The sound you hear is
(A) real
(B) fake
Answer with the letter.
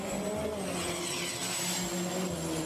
A